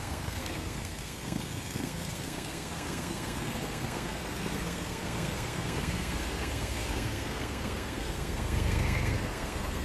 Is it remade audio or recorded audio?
remade